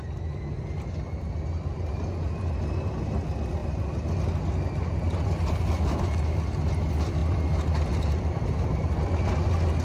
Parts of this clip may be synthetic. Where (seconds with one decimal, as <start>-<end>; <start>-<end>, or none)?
none